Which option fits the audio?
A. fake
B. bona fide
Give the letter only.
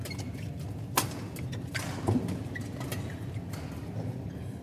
B